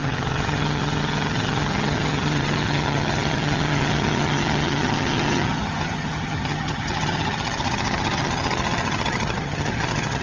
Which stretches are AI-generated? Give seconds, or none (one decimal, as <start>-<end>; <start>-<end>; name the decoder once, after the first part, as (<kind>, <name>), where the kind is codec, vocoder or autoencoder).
0.0-10.2 (vocoder, HiFi-GAN)